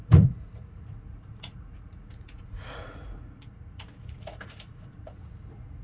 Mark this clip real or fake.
fake